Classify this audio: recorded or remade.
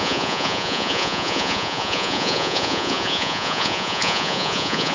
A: remade